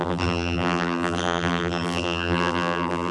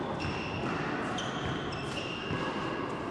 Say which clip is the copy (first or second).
first